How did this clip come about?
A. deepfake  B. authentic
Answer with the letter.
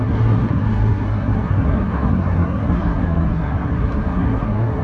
A